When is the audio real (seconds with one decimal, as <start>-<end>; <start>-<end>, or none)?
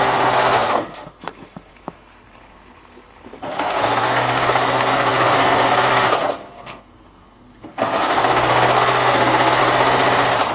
9.6-10.5